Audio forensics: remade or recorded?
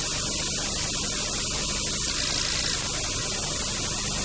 recorded